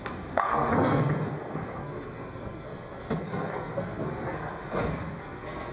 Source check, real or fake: fake